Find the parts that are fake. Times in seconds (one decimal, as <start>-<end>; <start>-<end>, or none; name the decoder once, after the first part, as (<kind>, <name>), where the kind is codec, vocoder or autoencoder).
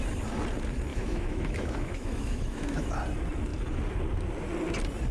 0.9-2.9 (autoencoder, DAC-VAE)